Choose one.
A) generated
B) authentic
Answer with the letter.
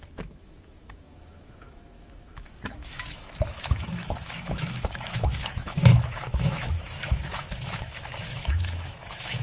A